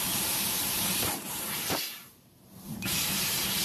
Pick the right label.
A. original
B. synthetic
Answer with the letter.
B